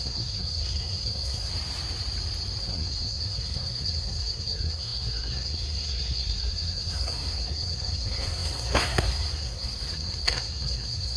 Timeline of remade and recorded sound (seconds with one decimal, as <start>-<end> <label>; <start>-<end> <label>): 0.0-1.5 remade; 1.5-2.6 recorded; 2.6-11.2 remade